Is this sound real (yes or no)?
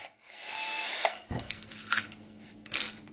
no